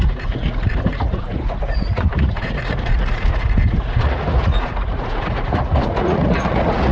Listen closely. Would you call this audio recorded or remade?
remade